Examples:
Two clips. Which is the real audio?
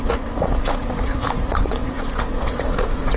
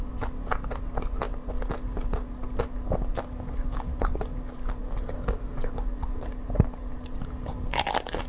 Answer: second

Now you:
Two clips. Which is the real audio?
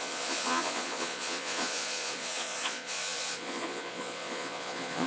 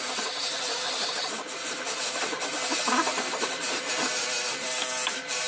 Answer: second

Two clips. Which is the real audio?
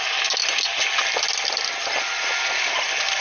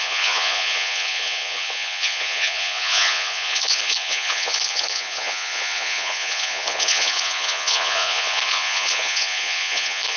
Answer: first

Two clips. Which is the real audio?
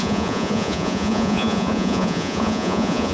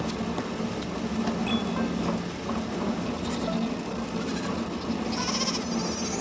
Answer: second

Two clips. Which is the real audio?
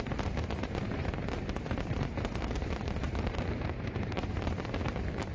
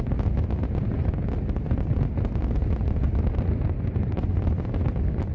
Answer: second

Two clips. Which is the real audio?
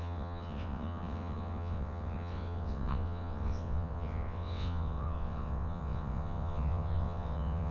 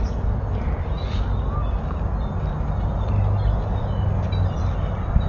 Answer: second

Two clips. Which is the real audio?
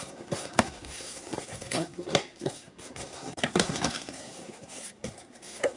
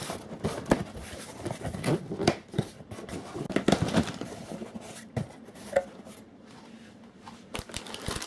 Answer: second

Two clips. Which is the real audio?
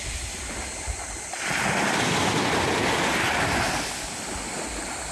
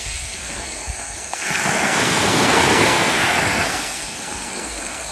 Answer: first